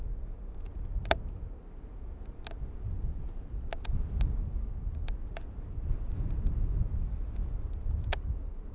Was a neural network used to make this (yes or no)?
no